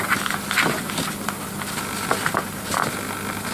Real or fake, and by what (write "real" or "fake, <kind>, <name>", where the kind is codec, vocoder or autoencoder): real